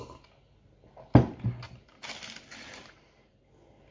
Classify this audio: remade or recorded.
recorded